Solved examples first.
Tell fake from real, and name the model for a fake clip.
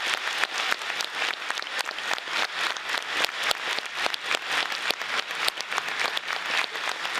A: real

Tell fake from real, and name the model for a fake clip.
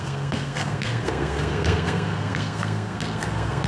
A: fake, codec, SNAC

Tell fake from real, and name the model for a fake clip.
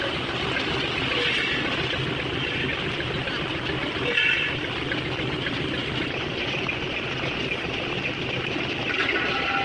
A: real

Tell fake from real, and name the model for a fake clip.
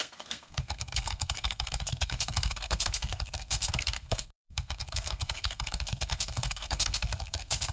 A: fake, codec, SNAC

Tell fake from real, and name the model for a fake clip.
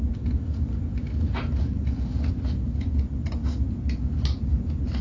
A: real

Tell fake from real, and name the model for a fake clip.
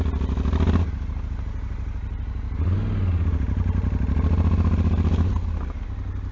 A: real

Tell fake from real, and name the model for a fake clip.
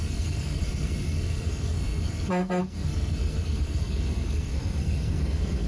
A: fake, codec, SNAC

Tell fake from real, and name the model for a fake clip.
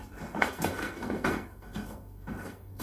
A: fake, codec, SNAC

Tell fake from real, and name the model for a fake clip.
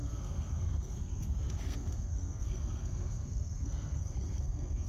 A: fake, codec, SNAC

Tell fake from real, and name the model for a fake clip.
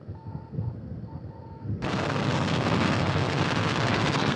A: fake, codec, SNAC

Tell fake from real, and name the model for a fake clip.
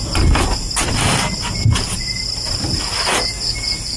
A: real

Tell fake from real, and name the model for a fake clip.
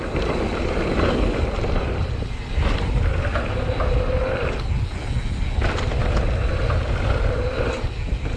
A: real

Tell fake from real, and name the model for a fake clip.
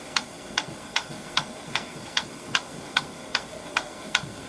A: fake, codec, SNAC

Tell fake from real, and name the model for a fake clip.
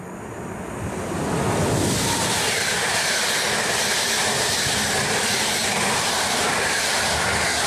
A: real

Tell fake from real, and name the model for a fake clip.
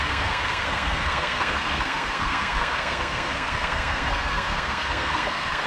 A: fake, codec, SNAC